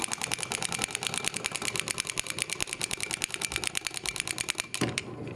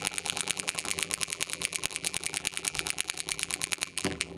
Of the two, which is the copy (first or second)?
second